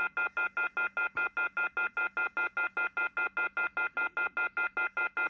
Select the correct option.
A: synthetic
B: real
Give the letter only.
B